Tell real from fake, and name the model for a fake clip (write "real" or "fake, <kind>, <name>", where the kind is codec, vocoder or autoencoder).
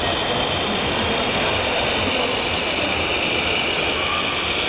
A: real